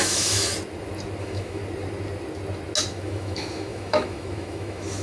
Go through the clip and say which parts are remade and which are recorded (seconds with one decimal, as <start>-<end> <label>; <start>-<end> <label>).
0.0-0.5 remade; 0.5-1.2 recorded; 1.2-1.6 remade; 1.6-2.9 recorded; 2.9-5.0 remade